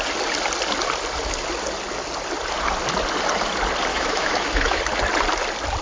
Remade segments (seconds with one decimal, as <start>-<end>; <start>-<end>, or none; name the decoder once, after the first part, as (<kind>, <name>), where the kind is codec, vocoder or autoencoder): 3.9-4.8 (autoencoder, DAC-VAE)